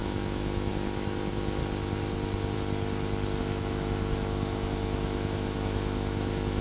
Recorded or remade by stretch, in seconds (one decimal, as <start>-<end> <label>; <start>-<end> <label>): 0.0-1.6 remade; 1.6-3.4 recorded; 3.4-6.6 remade